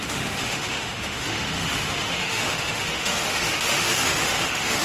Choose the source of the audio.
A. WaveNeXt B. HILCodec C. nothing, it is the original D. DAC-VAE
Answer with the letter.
D